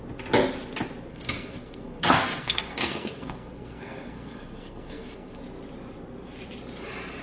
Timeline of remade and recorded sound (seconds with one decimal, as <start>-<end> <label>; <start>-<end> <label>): 0.0-1.1 recorded; 1.1-5.4 remade; 5.4-7.2 recorded